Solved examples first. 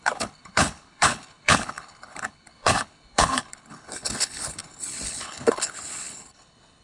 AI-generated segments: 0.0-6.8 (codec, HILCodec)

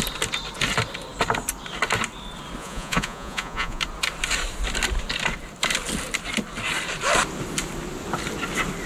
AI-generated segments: 2.6-3.8 (vocoder, Vocos)

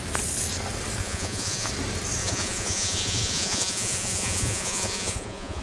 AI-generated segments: 1.0-1.7 (vocoder, Vocos); 2.2-5.6

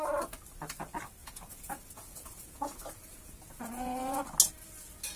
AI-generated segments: 1.2-4.2 (vocoder, Vocos)

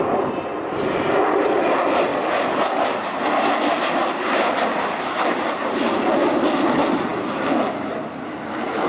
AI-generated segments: 0.0-2.1 (vocoder, BigVGAN v2); 5.5-7.1; 8.0-8.9